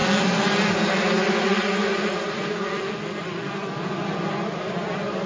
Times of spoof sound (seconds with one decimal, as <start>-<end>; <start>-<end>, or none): none